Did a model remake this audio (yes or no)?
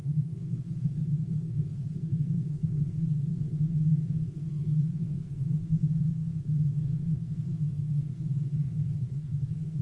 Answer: yes